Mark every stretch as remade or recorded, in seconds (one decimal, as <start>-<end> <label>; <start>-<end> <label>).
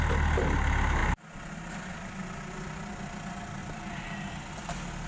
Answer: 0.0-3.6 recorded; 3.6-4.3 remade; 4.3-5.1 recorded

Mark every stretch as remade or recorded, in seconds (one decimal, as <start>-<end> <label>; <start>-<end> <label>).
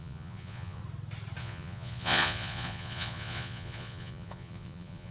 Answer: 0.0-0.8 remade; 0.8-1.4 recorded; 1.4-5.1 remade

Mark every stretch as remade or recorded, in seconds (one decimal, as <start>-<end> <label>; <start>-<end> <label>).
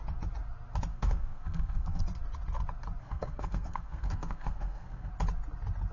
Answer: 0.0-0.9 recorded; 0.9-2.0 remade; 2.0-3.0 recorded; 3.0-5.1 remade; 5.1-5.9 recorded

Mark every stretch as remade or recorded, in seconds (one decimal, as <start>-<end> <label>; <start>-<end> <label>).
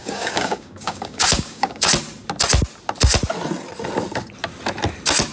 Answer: 0.0-1.9 remade; 1.9-5.3 recorded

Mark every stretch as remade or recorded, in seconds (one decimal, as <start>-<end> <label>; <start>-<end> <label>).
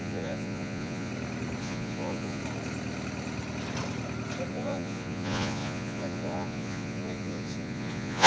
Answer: 0.0-1.1 remade; 1.1-1.6 recorded; 1.6-2.4 remade; 2.4-4.5 recorded; 4.5-8.3 remade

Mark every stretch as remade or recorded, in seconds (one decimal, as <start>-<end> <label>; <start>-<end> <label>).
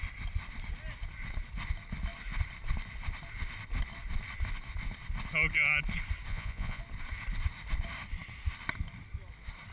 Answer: 0.0-6.3 recorded; 6.3-6.8 remade; 6.8-9.7 recorded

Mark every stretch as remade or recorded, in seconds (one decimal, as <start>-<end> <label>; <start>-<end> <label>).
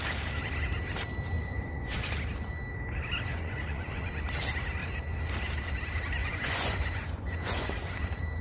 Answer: 0.0-1.4 recorded; 1.4-2.0 remade; 2.0-3.3 recorded; 3.3-4.1 remade; 4.1-6.2 recorded; 6.2-7.7 remade; 7.7-8.4 recorded